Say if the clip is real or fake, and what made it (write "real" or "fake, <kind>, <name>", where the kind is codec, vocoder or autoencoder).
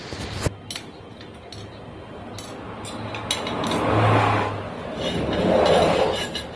real